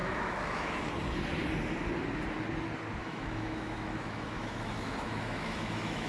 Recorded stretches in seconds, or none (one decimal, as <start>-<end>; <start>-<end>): 0.9-3.0